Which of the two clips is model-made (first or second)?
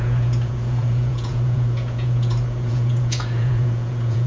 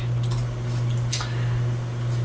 first